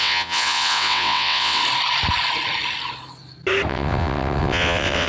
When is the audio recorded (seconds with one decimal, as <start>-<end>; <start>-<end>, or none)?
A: 1.6-3.7